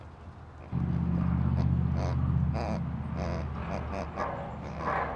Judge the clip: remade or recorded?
recorded